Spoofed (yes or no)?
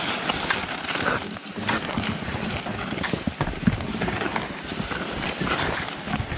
no